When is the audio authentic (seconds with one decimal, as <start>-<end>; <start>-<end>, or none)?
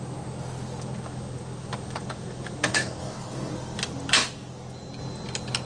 0.0-2.7; 3.5-5.7